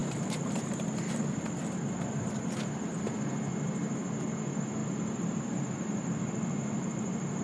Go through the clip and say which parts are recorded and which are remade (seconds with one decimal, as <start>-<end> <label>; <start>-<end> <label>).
0.0-0.9 remade; 0.9-4.8 recorded; 4.8-7.4 remade